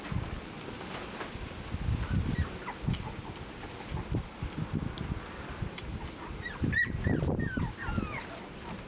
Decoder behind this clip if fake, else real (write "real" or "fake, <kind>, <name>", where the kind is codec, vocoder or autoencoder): real